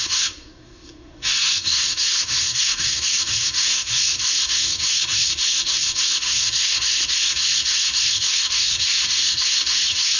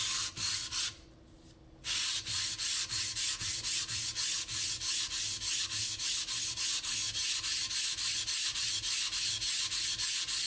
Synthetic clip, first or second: first